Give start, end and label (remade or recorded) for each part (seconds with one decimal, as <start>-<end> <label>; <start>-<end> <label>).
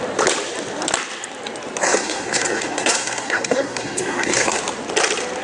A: 0.0-1.8 recorded; 1.8-4.6 remade; 4.6-5.4 recorded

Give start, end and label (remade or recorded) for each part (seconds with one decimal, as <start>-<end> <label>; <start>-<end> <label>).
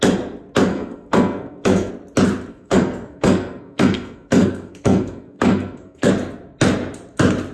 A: 0.0-0.7 recorded; 0.7-1.9 remade; 1.9-2.5 recorded; 2.5-6.1 remade; 6.1-7.5 recorded